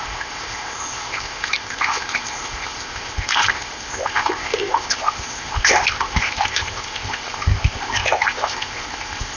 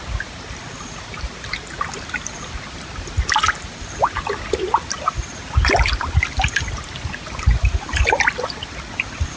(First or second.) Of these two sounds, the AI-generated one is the first